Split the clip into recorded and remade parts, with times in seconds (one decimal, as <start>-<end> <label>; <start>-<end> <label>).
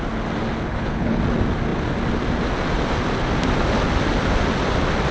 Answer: 0.0-0.7 recorded; 0.7-1.2 remade; 1.2-5.1 recorded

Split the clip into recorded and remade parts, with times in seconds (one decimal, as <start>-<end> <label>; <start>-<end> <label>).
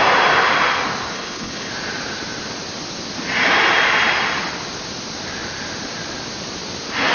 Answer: 0.0-1.1 recorded; 1.1-1.7 remade; 1.7-7.1 recorded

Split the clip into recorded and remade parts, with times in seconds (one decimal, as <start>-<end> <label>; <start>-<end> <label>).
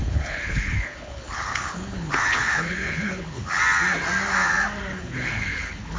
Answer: 0.0-3.6 remade; 3.6-4.9 recorded; 4.9-6.0 remade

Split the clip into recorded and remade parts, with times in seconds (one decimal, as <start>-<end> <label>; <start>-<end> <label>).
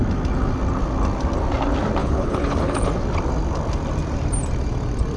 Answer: 0.0-2.0 recorded; 2.0-2.9 remade; 2.9-5.2 recorded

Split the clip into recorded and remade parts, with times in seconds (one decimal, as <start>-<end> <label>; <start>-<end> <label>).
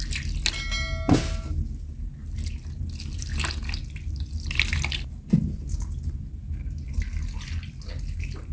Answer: 0.0-8.5 recorded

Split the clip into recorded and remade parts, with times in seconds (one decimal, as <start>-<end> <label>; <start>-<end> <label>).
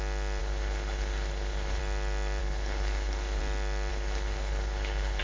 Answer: 0.0-0.4 recorded; 0.4-1.8 remade; 1.8-2.4 recorded; 2.4-3.4 remade; 3.4-3.9 recorded; 3.9-5.2 remade